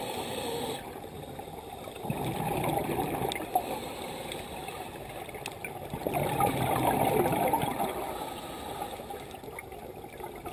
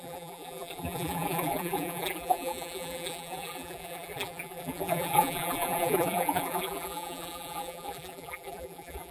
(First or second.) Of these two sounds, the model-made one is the second